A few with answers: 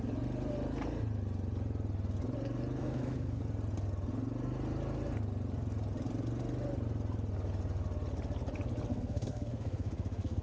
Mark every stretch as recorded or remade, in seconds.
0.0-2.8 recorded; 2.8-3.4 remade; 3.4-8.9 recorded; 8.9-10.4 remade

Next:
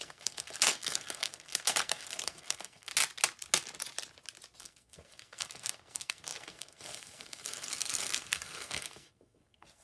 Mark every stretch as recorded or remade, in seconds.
0.0-2.9 remade; 2.9-4.6 recorded; 4.6-9.8 remade

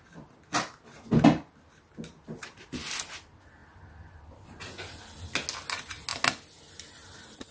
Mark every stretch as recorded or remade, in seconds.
0.0-7.5 recorded

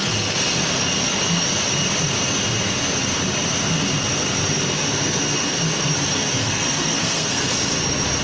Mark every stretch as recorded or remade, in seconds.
0.0-6.4 recorded; 6.4-7.4 remade; 7.4-8.2 recorded

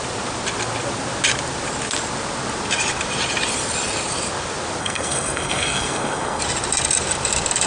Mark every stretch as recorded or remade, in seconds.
0.0-4.8 recorded; 4.8-6.4 remade; 6.4-7.7 recorded

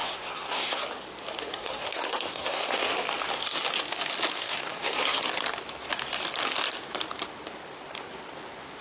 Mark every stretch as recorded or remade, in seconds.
0.0-0.8 remade; 0.8-1.5 recorded; 1.5-2.8 remade; 2.8-4.3 recorded; 4.3-5.2 remade; 5.2-8.8 recorded

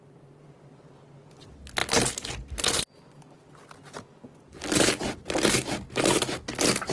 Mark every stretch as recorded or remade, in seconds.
0.0-6.9 recorded

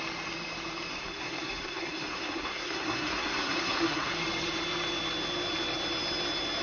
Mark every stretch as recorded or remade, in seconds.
0.0-0.9 recorded; 0.9-4.1 remade; 4.1-6.6 recorded